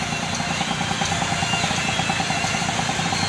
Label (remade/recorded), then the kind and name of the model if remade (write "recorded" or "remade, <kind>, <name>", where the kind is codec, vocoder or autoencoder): recorded